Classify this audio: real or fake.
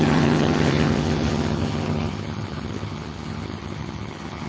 fake